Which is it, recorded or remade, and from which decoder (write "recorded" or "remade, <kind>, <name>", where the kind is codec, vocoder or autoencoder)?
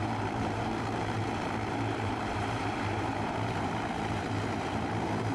remade, vocoder, BigVGAN v2